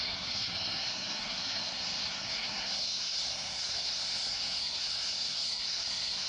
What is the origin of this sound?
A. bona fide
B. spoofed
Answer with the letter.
B